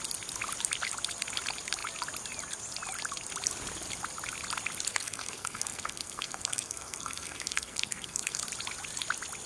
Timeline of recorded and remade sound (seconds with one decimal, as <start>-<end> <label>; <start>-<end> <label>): 0.0-4.9 recorded; 4.9-8.4 remade; 8.4-9.5 recorded